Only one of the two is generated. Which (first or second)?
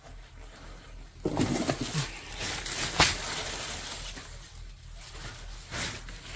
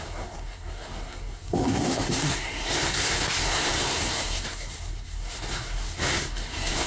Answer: second